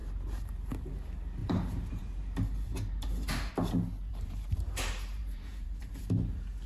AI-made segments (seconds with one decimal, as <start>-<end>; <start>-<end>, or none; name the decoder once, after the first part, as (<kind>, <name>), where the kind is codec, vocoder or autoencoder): 0.0-0.7 (vocoder, BigVGAN v2); 1.4-3.5; 4.1-6.0